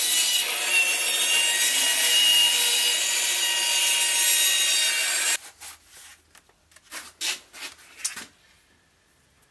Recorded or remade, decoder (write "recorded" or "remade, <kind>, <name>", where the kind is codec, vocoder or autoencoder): recorded